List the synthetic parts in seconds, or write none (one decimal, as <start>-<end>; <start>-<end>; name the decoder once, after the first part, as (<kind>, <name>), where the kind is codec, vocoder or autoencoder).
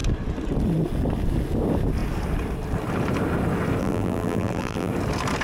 3.8-4.9 (vocoder, BigVGAN v2)